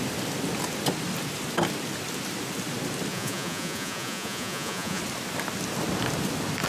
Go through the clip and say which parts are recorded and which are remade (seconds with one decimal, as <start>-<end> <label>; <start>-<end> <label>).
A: 0.0-3.1 recorded; 3.1-5.0 remade; 5.0-6.7 recorded